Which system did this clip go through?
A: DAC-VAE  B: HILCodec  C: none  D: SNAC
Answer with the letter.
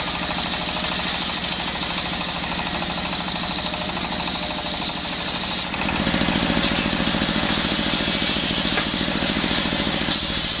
C